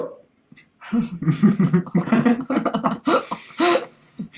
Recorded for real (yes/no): yes